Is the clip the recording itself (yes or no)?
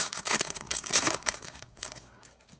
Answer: no